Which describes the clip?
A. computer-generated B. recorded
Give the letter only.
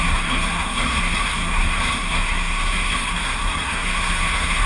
A